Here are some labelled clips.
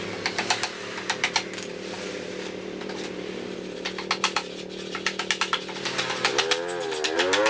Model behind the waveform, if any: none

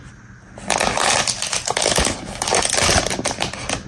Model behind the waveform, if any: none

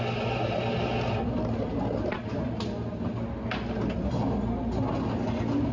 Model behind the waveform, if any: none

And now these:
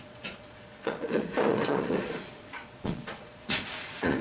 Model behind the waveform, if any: vocoder, Vocos